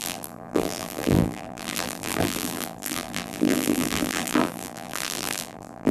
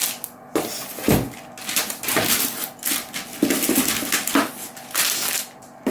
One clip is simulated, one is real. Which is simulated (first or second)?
first